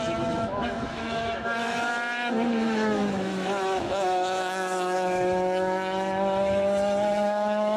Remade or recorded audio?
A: remade